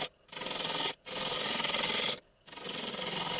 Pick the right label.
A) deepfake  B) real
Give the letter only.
B